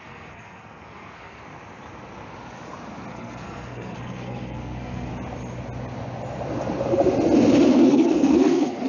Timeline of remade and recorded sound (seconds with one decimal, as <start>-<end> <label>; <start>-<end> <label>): 0.0-1.4 remade; 1.4-3.1 recorded; 3.1-5.1 remade; 5.1-7.7 recorded; 7.7-8.9 remade